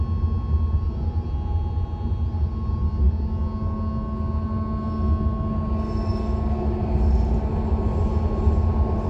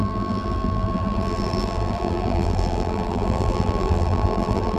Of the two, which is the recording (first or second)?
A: first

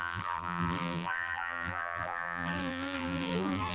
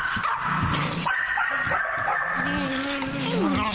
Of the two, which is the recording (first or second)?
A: second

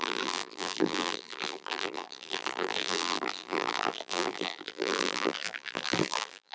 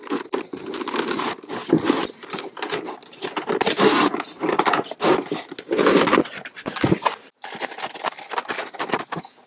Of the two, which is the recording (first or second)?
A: second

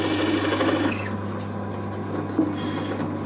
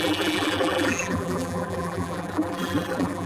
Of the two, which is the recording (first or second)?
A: first